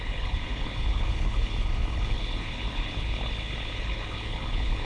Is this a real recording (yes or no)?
no